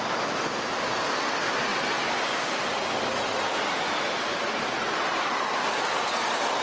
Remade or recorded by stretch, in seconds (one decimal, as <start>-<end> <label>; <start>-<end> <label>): 0.0-6.6 recorded